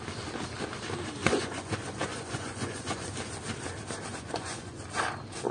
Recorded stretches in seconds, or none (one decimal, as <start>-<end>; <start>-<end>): 0.0-1.2; 3.1-4.1; 4.8-5.5